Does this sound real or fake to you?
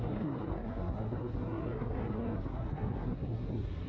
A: fake